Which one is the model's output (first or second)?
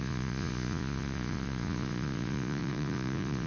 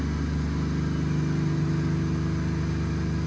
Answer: first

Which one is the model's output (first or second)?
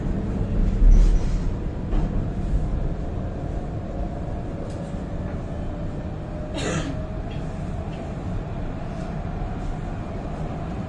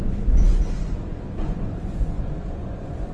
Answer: second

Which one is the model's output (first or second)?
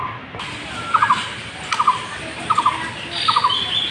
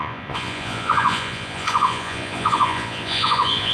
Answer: second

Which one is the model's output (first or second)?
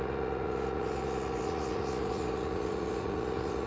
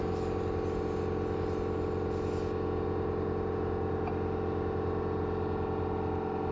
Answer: first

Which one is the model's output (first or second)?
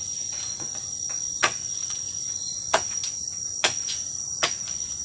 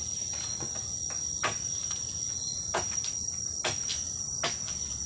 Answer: first